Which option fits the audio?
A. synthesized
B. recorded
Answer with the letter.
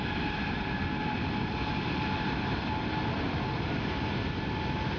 B